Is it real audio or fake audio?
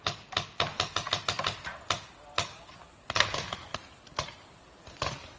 real